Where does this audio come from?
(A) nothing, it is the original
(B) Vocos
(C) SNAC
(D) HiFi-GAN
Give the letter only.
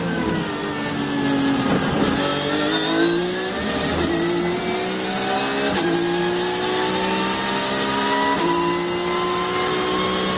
A